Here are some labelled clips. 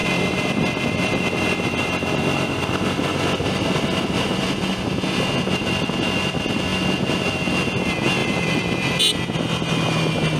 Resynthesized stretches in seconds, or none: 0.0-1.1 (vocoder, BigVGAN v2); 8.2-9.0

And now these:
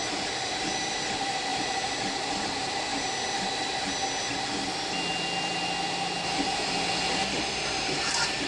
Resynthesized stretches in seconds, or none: 0.0-1.5 (vocoder, BigVGAN v2); 2.2-2.9; 7.3-8.5

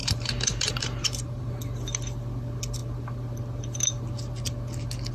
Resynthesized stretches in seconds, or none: 0.0-1.5 (vocoder, BigVGAN v2)

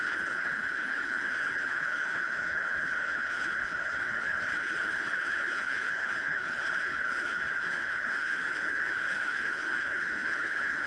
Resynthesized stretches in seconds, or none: 0.0-10.9 (codec, HILCodec)